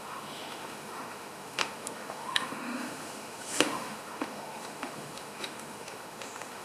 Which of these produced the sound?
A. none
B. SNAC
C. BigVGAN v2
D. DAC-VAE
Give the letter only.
D